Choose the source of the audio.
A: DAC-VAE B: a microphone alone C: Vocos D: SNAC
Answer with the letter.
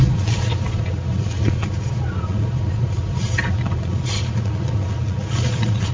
C